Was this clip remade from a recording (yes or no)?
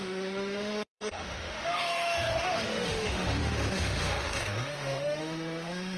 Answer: yes